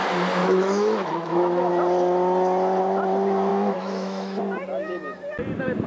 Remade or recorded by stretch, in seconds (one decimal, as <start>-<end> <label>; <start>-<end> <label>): 0.0-0.4 recorded; 0.4-1.7 remade; 1.7-3.5 recorded; 3.5-4.4 remade; 4.4-5.9 recorded